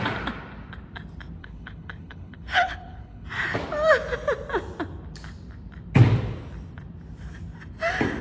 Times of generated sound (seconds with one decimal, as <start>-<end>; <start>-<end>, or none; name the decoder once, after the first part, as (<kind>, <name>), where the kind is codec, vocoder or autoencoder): 1.4-3.3 (codec, HILCodec)

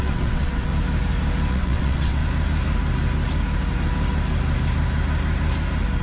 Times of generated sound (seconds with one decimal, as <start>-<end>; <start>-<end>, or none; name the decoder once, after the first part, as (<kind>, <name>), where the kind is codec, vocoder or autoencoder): 0.0-0.7 (vocoder, WaveNeXt); 1.5-2.2

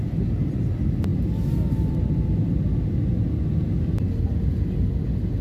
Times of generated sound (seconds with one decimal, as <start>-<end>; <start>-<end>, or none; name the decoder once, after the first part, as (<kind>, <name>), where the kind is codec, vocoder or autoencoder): none